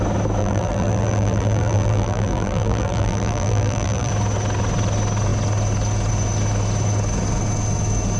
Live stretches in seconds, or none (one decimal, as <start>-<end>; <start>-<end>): 0.0-0.4; 4.1-8.2